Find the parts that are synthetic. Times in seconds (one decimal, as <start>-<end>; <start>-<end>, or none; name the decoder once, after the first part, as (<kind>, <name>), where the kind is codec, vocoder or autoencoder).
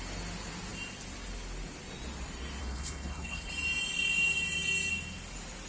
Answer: 2.6-3.5 (codec, HILCodec)